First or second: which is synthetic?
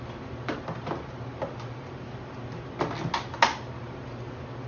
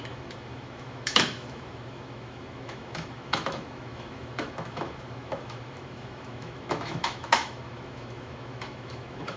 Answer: second